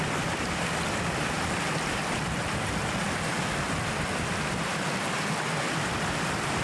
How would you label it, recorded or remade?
recorded